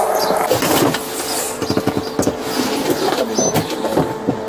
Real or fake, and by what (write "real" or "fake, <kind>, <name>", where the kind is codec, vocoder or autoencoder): real